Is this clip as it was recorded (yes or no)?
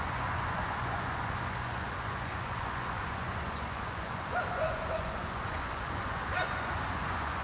no